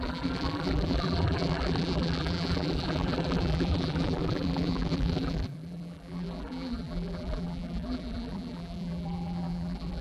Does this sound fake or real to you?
fake